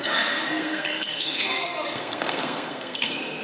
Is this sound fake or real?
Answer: fake